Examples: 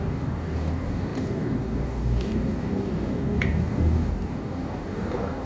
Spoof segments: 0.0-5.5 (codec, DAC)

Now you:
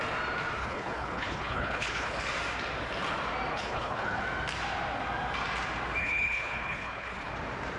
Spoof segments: 0.6-2.2 (codec, HILCodec); 3.5-4.2; 6.0-7.3

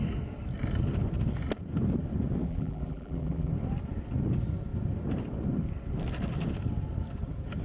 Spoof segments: 2.4-3.5 (vocoder, BigVGAN v2)